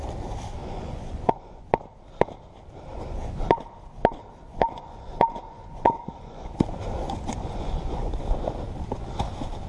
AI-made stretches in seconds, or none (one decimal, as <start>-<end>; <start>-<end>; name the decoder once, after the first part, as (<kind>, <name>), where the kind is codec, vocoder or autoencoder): 0.6-1.6 (vocoder, Vocos); 2.9-3.5; 4.5-8.1